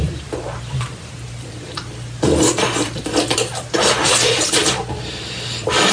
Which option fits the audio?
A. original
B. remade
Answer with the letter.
B